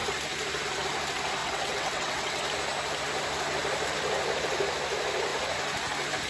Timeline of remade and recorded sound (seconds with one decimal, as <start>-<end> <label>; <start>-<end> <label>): 0.0-1.4 recorded; 1.4-2.4 remade; 2.4-6.3 recorded